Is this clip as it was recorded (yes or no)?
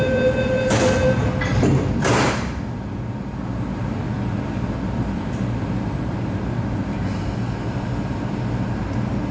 yes